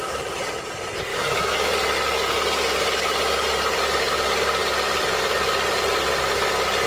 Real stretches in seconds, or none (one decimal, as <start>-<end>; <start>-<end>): 0.0-1.1; 1.7-6.9